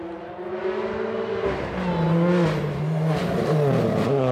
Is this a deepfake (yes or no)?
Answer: no